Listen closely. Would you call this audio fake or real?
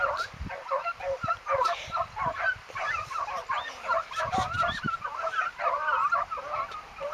fake